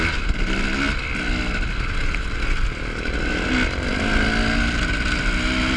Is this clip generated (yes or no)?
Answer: no